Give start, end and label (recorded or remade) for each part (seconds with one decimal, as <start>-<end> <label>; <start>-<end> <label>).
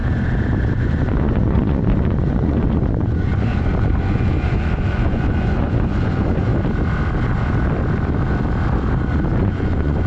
0.0-0.8 recorded; 0.8-6.5 remade; 6.5-9.4 recorded; 9.4-10.1 remade